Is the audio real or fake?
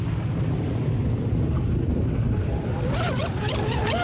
real